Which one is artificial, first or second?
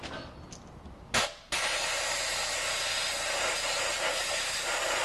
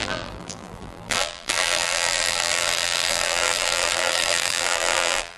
second